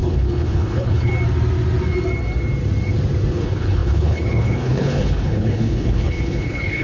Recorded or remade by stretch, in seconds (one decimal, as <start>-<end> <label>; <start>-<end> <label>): 0.0-1.1 remade; 1.1-3.3 recorded; 3.3-6.8 remade